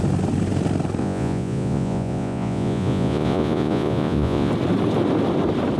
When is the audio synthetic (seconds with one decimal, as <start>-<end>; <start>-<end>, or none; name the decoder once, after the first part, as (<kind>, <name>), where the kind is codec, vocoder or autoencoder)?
1.0-4.5 (vocoder, Vocos)